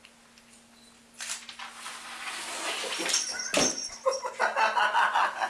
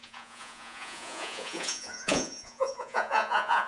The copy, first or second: second